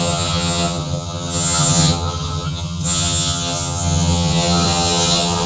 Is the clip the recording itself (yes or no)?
no